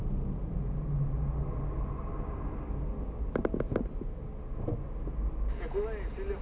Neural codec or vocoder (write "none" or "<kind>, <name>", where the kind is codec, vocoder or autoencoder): none